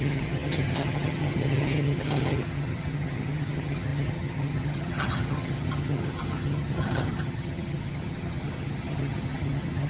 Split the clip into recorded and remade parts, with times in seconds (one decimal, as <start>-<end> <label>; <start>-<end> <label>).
0.0-9.9 remade